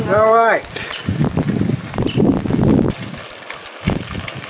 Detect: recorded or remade recorded